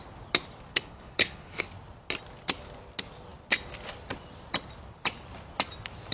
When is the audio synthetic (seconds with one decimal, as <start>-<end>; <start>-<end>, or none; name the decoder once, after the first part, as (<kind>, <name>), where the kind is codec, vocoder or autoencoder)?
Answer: 0.7-1.6 (codec, HILCodec)